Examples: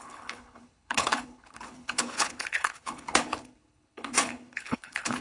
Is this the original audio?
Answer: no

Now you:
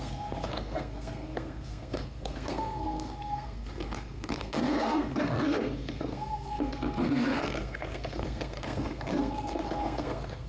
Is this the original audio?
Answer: no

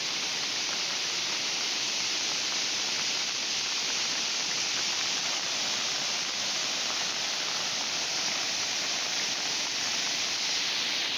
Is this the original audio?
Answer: yes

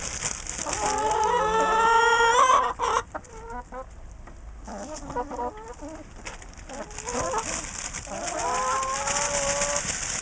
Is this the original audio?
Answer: yes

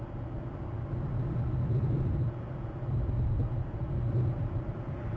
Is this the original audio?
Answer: yes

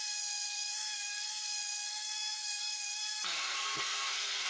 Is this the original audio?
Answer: no